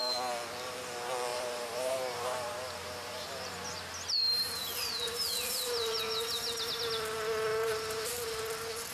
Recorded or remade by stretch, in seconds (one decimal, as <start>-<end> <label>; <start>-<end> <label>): 0.0-1.3 recorded; 1.3-6.0 remade; 6.0-7.5 recorded; 7.5-8.4 remade; 8.4-8.9 recorded